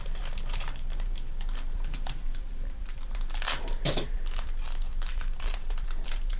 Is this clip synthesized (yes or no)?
yes